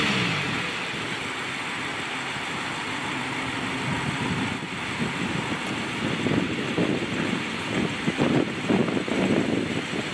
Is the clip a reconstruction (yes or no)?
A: no